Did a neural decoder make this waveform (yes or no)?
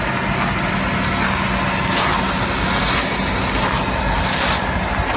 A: no